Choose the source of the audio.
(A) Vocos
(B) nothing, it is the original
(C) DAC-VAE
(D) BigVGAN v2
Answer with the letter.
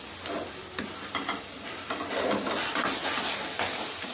B